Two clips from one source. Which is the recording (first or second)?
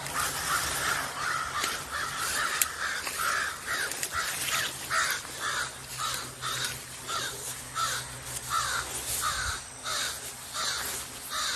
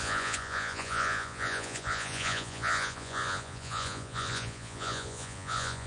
first